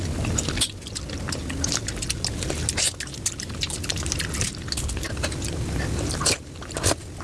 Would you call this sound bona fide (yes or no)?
yes